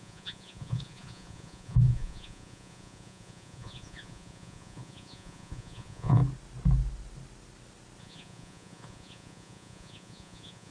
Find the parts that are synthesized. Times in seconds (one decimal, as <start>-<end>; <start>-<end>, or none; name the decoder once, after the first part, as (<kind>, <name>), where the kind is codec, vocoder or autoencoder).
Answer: 0.0-6.2 (vocoder, Vocos); 8.0-10.7